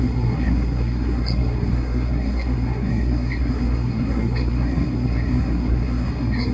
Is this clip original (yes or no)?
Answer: no